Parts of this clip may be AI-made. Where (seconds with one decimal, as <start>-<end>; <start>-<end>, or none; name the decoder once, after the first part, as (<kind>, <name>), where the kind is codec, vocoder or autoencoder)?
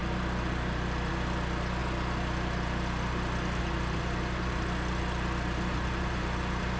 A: none